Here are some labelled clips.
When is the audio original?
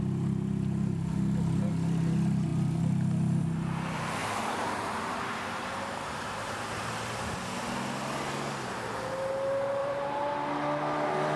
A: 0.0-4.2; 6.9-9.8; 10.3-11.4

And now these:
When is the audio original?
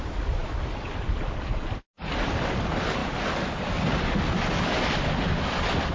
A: 0.0-5.9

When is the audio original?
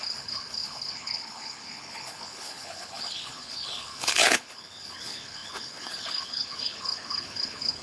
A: none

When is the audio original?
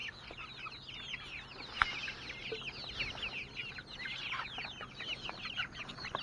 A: 0.0-6.2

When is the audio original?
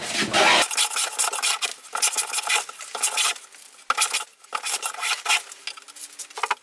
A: 0.0-4.3; 5.2-6.6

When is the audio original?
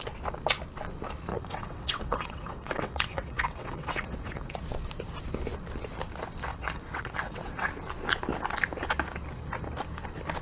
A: 0.0-1.3; 4.6-6.5; 7.7-10.4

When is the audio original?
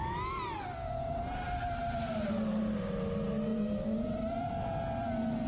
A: 0.0-3.5; 4.5-5.5